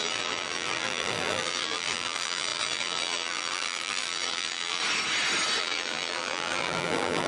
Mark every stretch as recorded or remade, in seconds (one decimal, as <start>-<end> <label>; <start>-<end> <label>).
0.0-4.8 remade; 4.8-5.6 recorded; 5.6-7.3 remade